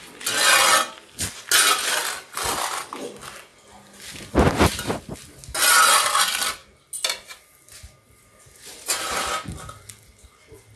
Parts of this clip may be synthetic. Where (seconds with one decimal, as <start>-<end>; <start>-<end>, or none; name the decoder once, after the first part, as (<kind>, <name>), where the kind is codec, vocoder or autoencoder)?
none